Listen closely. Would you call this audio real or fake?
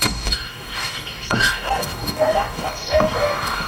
fake